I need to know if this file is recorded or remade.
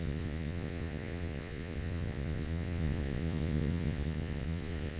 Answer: remade